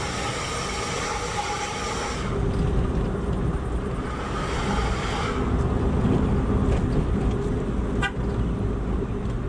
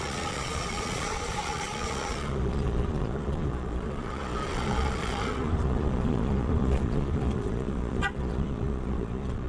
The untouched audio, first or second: first